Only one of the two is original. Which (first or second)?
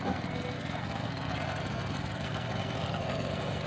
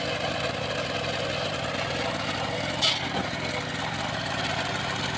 second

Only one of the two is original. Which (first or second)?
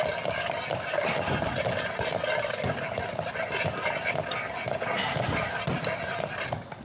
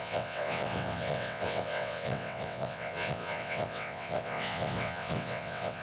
first